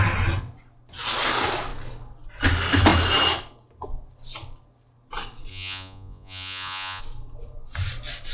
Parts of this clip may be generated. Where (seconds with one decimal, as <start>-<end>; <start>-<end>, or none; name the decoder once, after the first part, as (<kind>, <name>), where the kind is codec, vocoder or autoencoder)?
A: 5.5-7.0 (vocoder, Vocos)